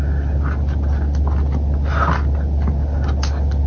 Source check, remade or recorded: recorded